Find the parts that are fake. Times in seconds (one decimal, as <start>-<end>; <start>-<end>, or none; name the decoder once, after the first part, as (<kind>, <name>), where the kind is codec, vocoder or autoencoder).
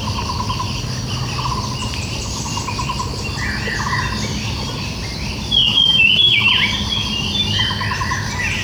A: 5.6-6.5 (autoencoder, DAC-VAE)